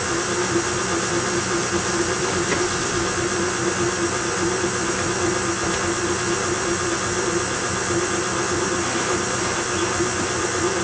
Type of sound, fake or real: real